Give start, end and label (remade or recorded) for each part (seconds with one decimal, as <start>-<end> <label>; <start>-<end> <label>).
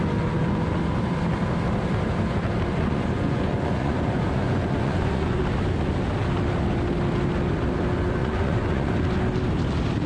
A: 0.0-2.7 recorded; 2.7-5.4 remade; 5.4-8.2 recorded; 8.2-8.9 remade; 8.9-10.1 recorded